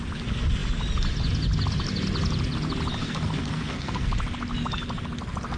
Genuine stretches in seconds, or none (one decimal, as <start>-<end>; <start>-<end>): 0.0-3.0; 4.1-5.6